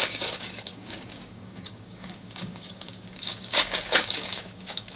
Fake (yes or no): yes